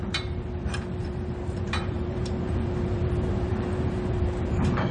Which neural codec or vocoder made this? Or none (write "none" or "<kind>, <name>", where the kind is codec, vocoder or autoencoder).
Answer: vocoder, BigVGAN v2